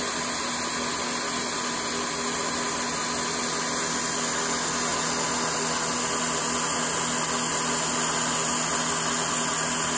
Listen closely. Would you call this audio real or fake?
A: real